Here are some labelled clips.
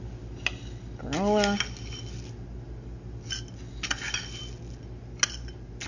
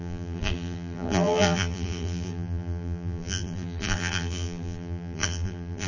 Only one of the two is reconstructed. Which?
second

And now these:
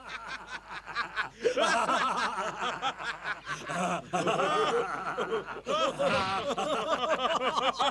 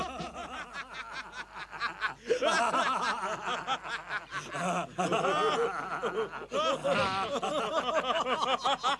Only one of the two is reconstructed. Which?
first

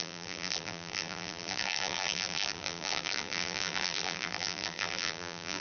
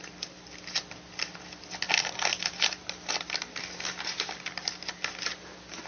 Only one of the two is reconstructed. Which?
first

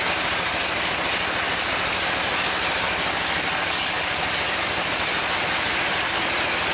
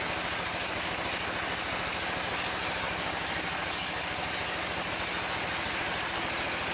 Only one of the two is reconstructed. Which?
first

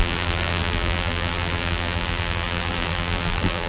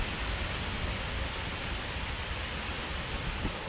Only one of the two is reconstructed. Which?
first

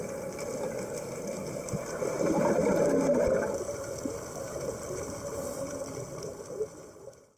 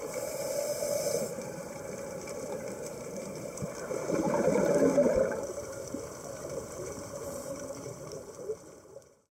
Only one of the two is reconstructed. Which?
second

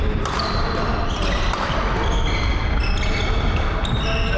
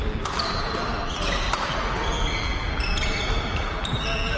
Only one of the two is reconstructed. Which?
second